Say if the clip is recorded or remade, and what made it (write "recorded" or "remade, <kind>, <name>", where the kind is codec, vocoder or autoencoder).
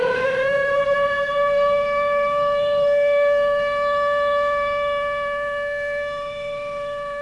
remade, autoencoder, DAC-VAE